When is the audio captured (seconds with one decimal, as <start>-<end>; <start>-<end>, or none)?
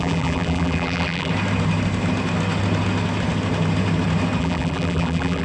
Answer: 1.3-4.4